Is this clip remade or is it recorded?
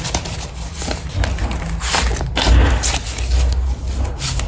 recorded